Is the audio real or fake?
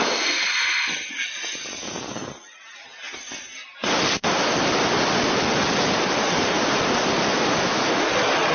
real